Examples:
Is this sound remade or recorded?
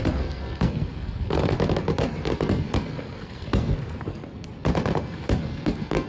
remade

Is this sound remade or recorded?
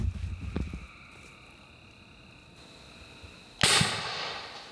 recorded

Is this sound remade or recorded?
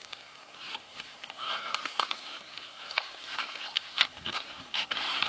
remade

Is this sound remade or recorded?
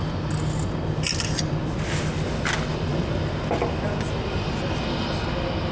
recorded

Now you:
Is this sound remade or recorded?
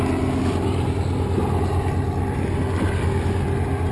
recorded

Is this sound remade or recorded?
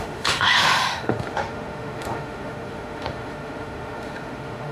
remade